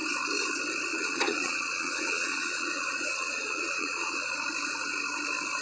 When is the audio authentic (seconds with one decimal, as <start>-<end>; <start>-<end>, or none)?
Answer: 0.0-0.9; 4.3-5.6